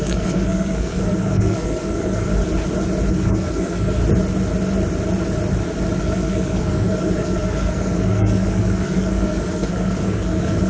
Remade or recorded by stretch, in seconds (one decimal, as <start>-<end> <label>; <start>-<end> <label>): 0.0-2.3 remade; 2.3-3.1 recorded; 3.1-4.0 remade; 4.0-6.0 recorded; 6.0-10.7 remade